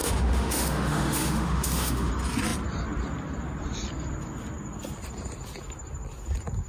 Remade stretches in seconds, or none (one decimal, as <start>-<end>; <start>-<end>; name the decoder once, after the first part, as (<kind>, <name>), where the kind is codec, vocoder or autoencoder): 0.0-2.1 (autoencoder, DAC-VAE)